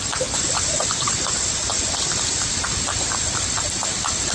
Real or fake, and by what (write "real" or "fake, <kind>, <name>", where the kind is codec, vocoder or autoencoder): real